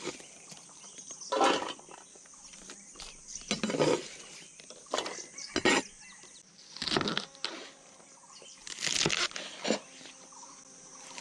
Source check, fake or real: real